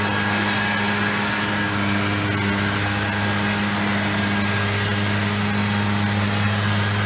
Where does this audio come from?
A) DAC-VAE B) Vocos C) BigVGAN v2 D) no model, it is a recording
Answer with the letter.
D